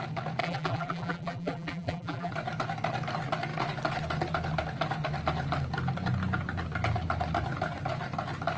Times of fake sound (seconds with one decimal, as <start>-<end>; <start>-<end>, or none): 0.4-2.3